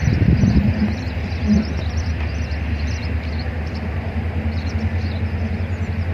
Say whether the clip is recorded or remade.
recorded